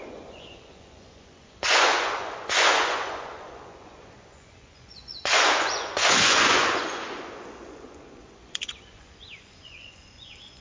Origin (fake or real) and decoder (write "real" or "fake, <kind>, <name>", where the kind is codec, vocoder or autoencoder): fake, vocoder, Vocos